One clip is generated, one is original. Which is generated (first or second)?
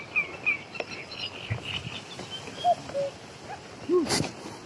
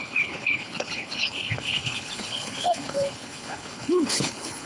second